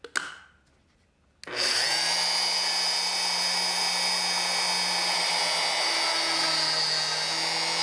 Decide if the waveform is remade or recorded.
recorded